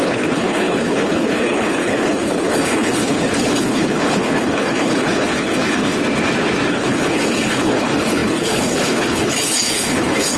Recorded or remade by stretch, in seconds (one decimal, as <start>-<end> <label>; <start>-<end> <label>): 0.0-6.0 remade; 6.0-6.7 recorded; 6.7-10.4 remade